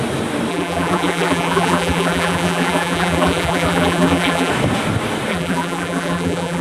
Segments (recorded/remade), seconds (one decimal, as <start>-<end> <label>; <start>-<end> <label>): 0.0-0.5 recorded; 0.5-4.5 remade; 4.5-5.3 recorded; 5.3-6.6 remade